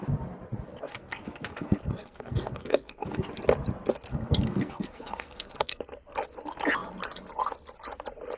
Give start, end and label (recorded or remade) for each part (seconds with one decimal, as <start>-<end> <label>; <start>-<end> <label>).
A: 0.0-0.7 recorded; 0.7-3.3 remade; 3.3-4.1 recorded; 4.1-5.8 remade; 5.8-8.4 recorded